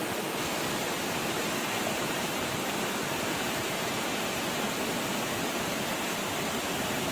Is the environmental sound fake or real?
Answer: real